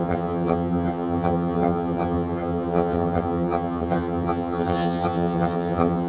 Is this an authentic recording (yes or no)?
no